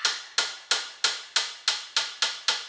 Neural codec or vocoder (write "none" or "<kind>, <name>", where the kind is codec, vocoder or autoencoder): none